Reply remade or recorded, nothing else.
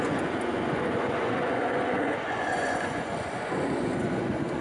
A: remade